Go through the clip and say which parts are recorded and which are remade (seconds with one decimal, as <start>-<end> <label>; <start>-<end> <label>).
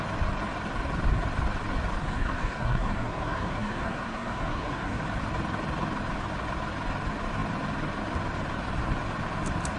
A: 0.0-2.0 recorded; 2.0-5.0 remade; 5.0-9.8 recorded